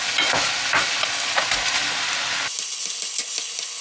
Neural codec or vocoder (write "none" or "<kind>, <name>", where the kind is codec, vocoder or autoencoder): none